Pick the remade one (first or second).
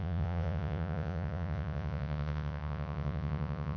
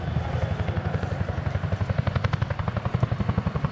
first